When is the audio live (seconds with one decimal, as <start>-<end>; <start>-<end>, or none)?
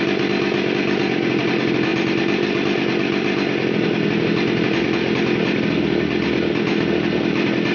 0.0-7.7